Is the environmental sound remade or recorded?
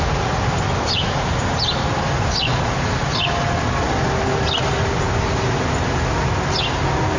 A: recorded